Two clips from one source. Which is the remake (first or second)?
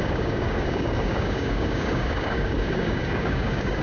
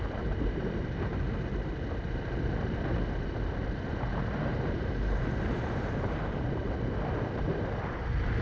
first